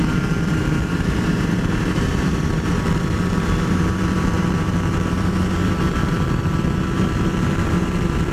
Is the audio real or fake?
fake